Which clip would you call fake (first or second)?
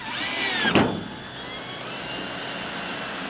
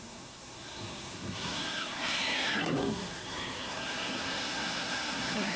second